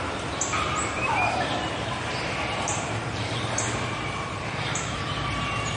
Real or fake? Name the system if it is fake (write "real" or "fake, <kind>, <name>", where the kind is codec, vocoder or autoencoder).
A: fake, vocoder, BigVGAN v2